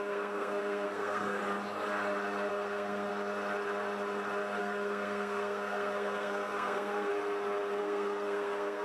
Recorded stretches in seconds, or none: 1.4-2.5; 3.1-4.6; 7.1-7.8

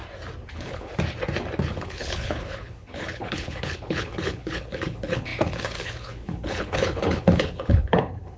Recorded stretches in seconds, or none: 0.0-0.5; 0.9-1.7

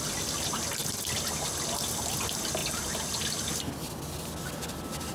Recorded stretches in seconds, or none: 0.0-5.1

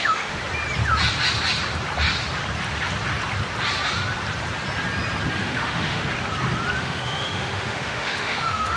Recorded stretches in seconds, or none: 0.4-5.4; 6.0-6.8

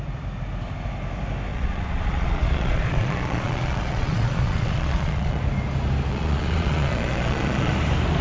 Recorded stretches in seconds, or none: 0.0-1.5; 5.4-6.1; 7.7-8.2

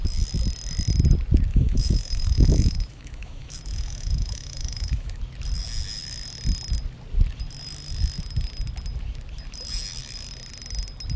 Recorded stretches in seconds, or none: 0.0-1.5; 5.2-11.2

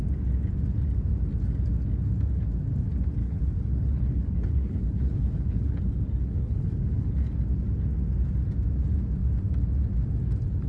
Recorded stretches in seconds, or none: 0.0-3.2; 5.8-6.2; 7.1-10.7

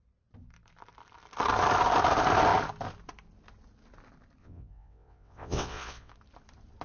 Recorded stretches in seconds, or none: 0.0-4.4; 6.1-6.8